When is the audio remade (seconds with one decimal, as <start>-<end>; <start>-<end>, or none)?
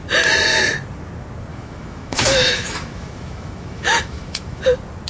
1.5-4.6